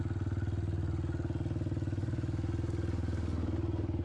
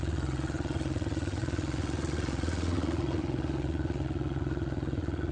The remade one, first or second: second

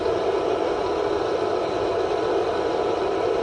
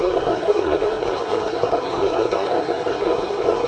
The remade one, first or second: second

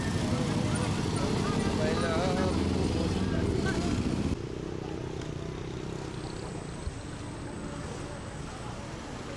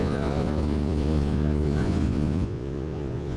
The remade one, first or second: second